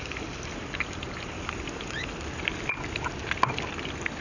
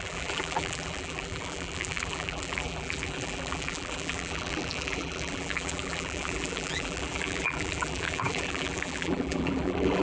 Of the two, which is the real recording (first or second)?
first